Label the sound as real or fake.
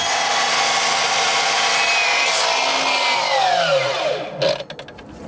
real